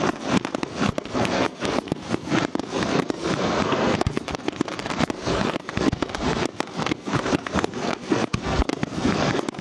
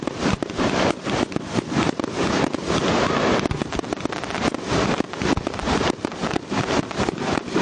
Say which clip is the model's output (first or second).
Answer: first